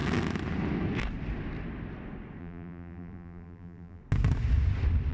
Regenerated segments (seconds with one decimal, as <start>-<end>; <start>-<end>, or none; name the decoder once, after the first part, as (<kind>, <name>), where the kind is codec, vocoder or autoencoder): 2.4-4.0 (vocoder, BigVGAN v2)